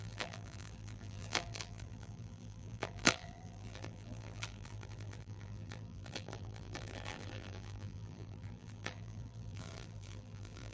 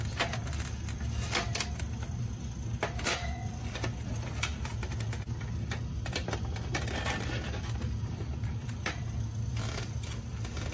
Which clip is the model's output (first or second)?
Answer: first